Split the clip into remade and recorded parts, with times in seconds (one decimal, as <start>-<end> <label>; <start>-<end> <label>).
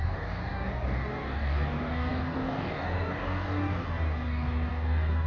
0.0-5.3 remade